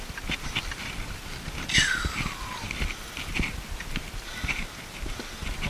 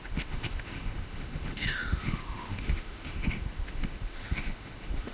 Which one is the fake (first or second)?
second